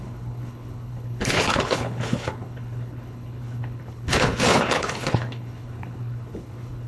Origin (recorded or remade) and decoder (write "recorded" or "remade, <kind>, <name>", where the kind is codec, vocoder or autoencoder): remade, codec, HILCodec